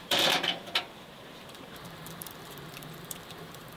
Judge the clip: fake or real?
fake